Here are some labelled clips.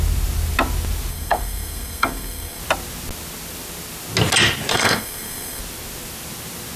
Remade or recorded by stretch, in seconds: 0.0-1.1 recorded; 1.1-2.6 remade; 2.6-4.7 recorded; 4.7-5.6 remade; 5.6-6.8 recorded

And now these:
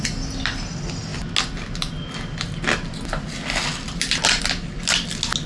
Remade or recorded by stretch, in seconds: 0.0-5.5 recorded

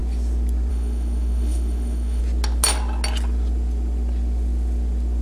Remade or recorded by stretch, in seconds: 0.0-0.7 recorded; 0.7-2.2 remade; 2.2-5.2 recorded

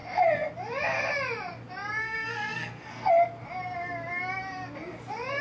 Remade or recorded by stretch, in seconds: 0.0-2.0 recorded; 2.0-3.1 remade; 3.1-5.4 recorded

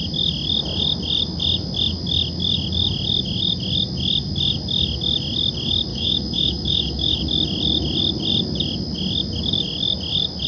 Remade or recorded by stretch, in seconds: 0.0-5.9 recorded; 5.9-7.2 remade; 7.2-10.5 recorded

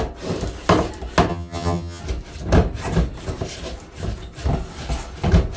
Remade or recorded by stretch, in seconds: 0.0-1.3 recorded; 1.3-2.0 remade; 2.0-5.6 recorded

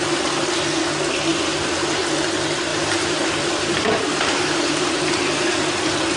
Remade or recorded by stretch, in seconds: 0.0-2.7 recorded; 2.7-5.0 remade; 5.0-6.2 recorded

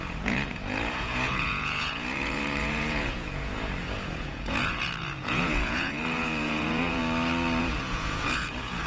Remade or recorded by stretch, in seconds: 0.0-7.0 remade; 7.0-7.6 recorded; 7.6-8.9 remade